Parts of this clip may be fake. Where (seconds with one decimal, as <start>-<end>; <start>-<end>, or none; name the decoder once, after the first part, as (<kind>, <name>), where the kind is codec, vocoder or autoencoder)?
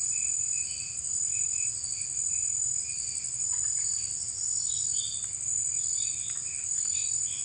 none